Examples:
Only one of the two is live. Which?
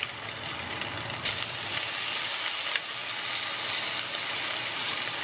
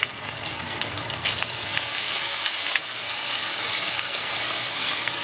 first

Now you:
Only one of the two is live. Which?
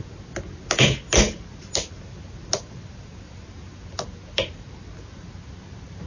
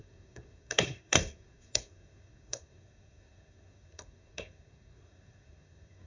first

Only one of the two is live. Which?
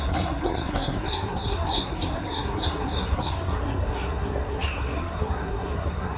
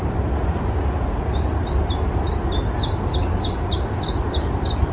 second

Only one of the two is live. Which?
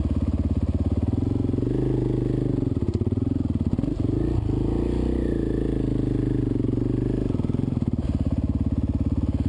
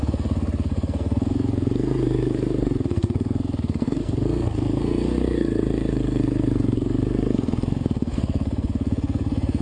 first